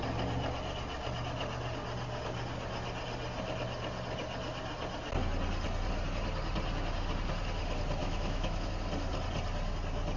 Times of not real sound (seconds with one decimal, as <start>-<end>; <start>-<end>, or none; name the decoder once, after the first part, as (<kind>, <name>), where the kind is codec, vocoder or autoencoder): 8.0-8.7 (autoencoder, DAC-VAE)